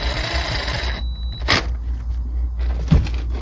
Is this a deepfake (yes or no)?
no